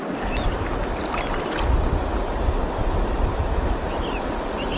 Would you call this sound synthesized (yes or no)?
no